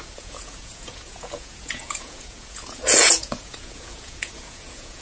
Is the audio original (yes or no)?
no